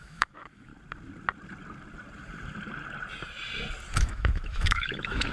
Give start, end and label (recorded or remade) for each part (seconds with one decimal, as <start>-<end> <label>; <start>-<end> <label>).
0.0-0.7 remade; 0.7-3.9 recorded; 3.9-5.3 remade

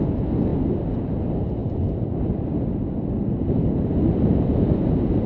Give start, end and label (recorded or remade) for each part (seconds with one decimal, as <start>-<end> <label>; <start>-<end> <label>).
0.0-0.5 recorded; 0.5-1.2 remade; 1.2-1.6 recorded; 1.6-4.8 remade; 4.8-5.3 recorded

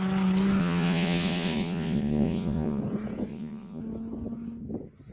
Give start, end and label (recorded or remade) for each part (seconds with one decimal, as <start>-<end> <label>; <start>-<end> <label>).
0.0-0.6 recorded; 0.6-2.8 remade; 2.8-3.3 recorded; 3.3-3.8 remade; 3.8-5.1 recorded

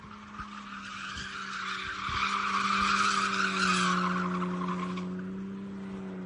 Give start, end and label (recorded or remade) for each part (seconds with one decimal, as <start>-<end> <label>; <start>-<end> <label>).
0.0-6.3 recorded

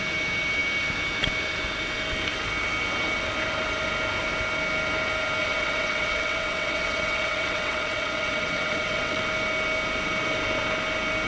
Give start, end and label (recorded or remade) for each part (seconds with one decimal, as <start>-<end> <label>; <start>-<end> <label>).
0.0-5.4 recorded; 5.4-9.2 remade; 9.2-11.3 recorded

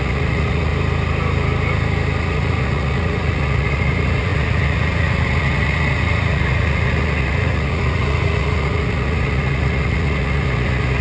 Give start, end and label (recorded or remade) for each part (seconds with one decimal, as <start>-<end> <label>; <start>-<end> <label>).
0.0-0.7 remade; 0.7-2.2 recorded; 2.2-11.0 remade